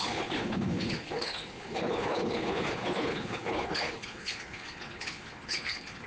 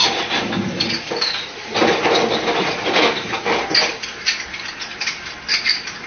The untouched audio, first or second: second